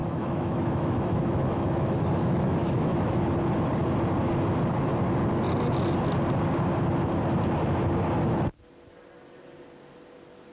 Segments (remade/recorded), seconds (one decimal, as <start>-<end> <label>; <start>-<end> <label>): 0.0-3.2 remade; 3.2-10.5 recorded